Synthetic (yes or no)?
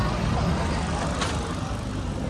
no